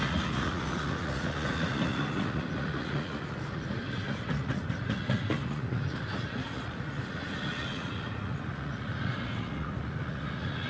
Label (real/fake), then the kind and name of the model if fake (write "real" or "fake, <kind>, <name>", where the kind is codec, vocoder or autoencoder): fake, vocoder, Vocos